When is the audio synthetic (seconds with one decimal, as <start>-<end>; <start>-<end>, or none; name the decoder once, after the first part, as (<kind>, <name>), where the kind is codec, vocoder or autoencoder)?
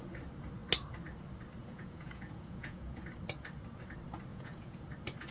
1.6-3.0 (vocoder, Vocos); 4.3-4.8